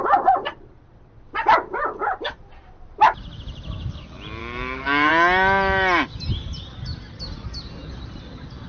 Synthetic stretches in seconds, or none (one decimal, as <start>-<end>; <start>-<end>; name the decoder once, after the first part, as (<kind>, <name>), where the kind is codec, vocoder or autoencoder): 4.4-5.1 (codec, DAC)